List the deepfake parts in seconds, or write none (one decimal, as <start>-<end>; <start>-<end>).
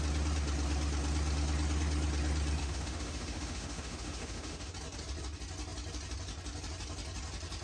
2.6-4.7